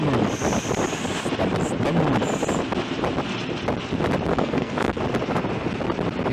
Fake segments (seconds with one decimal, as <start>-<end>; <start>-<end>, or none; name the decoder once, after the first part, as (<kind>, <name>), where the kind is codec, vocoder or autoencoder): 4.3-5.0 (codec, SNAC)